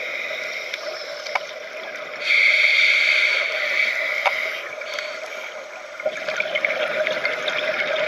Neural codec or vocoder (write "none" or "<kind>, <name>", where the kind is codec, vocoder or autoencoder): none